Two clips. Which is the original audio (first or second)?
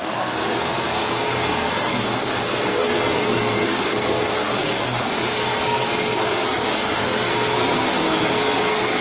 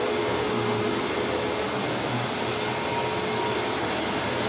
second